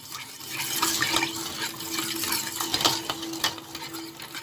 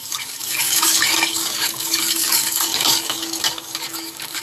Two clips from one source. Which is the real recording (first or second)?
first